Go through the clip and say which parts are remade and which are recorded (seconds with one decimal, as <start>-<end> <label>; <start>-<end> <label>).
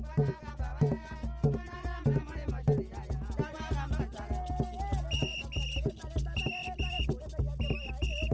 0.0-6.6 recorded; 6.6-7.2 remade; 7.2-8.3 recorded